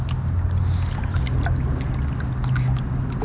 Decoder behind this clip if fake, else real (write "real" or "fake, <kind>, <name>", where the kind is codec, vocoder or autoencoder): real